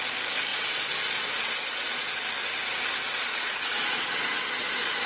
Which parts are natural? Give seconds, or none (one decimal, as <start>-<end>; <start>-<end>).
0.0-0.5; 2.2-3.0